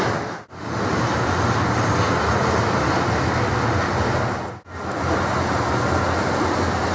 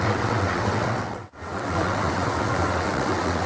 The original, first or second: first